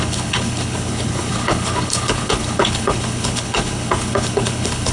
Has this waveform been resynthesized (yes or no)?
yes